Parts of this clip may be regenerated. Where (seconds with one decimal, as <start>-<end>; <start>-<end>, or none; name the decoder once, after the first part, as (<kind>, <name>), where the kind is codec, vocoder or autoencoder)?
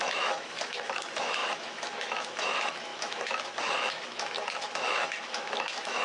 0.0-6.0 (autoencoder, DAC-VAE)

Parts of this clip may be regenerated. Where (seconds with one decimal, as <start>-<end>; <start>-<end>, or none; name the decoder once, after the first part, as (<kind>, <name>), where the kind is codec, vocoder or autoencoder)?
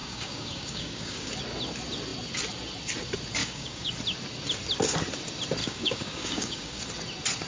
0.0-1.3 (codec, DAC); 3.4-3.9; 5.6-6.8